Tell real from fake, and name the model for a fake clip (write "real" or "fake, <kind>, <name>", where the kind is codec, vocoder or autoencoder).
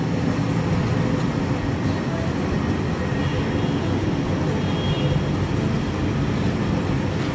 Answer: real